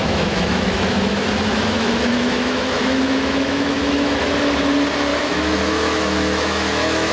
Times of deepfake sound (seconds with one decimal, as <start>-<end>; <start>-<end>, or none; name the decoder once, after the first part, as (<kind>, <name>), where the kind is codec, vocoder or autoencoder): 0.0-4.3 (autoencoder, DAC-VAE); 5.1-7.1